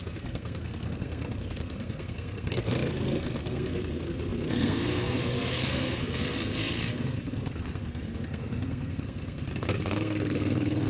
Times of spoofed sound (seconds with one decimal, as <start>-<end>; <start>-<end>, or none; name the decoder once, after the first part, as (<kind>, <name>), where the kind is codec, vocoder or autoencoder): 0.0-10.9 (codec, SNAC)